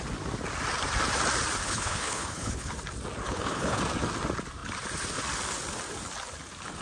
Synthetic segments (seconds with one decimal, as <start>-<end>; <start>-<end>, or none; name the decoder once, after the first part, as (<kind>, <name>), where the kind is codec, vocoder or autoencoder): 1.6-2.7 (codec, HILCodec); 3.2-3.8